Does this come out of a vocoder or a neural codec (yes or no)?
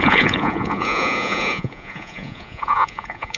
yes